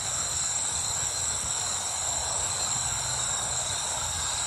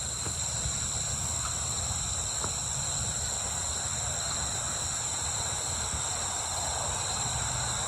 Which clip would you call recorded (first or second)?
second